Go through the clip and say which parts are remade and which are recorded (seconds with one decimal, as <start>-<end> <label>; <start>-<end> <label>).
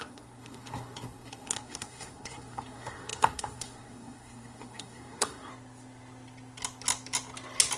0.0-5.5 remade; 5.5-7.8 recorded